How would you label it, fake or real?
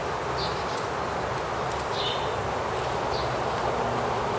real